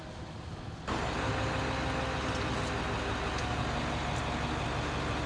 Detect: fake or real real